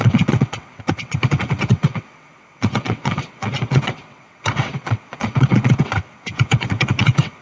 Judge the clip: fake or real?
fake